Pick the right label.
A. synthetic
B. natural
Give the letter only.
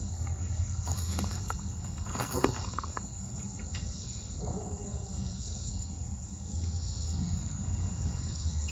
A